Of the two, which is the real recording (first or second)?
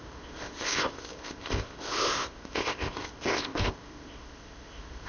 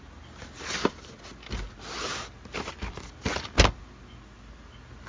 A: second